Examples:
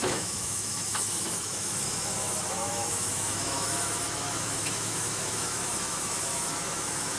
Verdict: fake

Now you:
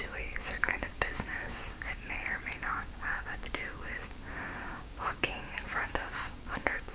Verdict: fake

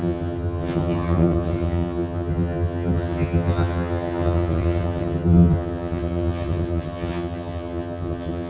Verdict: fake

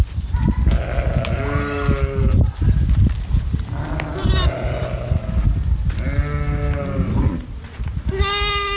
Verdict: real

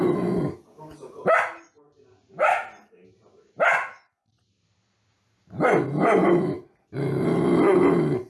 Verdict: real